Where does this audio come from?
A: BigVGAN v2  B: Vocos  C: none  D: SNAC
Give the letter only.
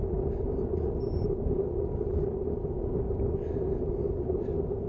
C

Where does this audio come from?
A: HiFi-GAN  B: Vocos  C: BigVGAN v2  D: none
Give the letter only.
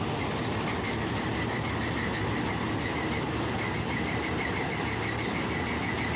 D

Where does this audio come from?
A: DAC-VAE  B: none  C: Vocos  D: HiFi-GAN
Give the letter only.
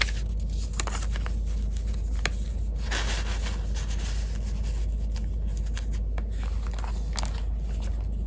B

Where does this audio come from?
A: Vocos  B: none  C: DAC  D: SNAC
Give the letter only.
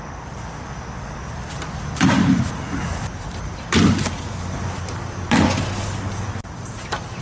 B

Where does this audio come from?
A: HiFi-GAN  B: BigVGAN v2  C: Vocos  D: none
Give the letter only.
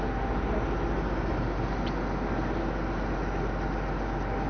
D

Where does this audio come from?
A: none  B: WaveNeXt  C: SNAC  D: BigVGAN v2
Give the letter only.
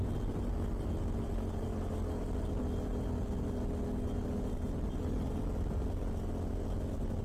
A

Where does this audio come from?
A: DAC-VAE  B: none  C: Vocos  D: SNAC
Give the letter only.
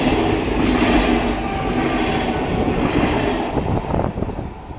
B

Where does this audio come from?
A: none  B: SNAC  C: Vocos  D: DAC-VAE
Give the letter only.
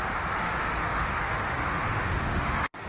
D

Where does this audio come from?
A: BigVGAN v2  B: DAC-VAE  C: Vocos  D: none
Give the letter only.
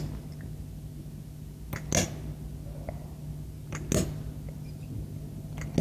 D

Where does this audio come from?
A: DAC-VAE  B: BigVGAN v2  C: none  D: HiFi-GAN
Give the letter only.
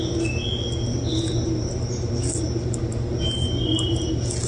C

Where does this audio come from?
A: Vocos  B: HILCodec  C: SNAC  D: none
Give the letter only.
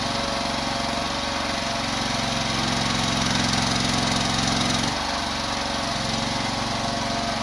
D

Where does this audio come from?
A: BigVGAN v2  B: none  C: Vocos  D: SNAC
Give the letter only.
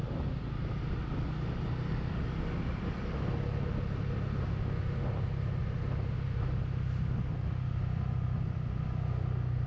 B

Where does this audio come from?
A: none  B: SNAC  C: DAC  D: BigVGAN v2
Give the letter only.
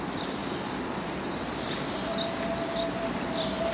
A